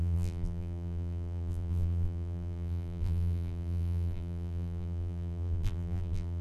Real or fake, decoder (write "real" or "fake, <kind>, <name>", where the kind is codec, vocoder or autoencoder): fake, vocoder, BigVGAN v2